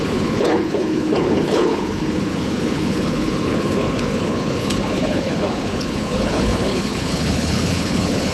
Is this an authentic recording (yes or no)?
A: no